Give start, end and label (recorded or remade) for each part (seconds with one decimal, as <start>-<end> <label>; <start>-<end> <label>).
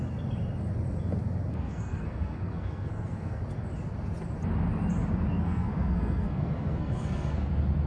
0.0-1.5 recorded; 1.5-3.4 remade; 3.4-5.3 recorded; 5.3-7.5 remade; 7.5-7.9 recorded